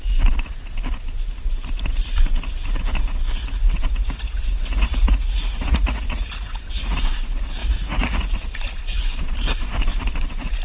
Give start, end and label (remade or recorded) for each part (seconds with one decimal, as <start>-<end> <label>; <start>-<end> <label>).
0.0-3.4 recorded; 3.4-7.0 remade; 7.0-7.6 recorded; 7.6-9.0 remade; 9.0-10.6 recorded